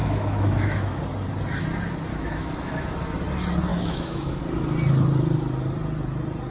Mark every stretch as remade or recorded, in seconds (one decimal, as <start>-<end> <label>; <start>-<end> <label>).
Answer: 0.0-1.0 remade; 1.0-2.1 recorded; 2.1-2.8 remade; 2.8-3.7 recorded; 3.7-4.4 remade; 4.4-6.5 recorded